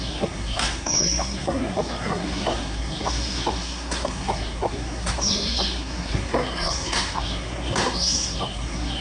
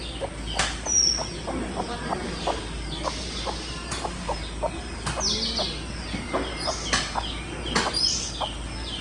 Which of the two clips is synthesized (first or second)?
first